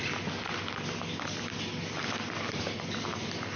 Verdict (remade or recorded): recorded